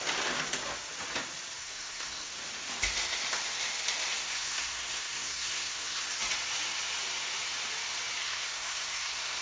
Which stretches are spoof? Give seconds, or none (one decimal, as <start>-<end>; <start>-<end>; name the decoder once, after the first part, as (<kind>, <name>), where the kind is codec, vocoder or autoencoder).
1.6-2.3 (codec, SNAC); 4.2-6.0; 8.2-9.4